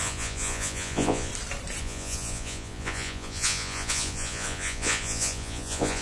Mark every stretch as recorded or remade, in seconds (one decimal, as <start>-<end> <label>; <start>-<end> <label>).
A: 0.0-1.3 remade; 1.3-1.8 recorded; 1.8-6.0 remade